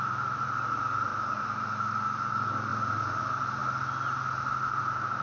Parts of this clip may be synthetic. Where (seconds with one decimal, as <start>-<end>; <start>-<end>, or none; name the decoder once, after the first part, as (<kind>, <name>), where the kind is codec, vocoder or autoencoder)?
0.0-3.6 (vocoder, BigVGAN v2); 4.8-5.2